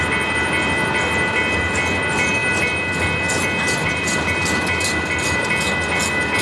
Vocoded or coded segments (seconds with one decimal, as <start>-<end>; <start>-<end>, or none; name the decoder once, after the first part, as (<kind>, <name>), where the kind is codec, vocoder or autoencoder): 3.8-5.5 (vocoder, BigVGAN v2)